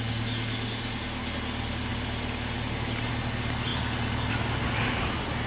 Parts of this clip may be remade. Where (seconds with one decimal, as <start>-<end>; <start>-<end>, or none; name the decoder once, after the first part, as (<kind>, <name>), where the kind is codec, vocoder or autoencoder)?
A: none